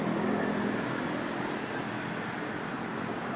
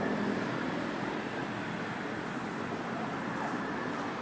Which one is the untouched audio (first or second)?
first